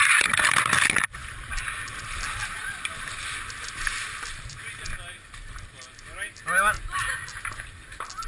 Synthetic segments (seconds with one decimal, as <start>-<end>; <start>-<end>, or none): none